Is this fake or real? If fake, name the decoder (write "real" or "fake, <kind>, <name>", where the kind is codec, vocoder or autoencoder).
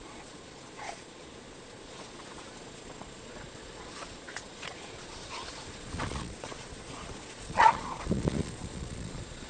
fake, vocoder, Vocos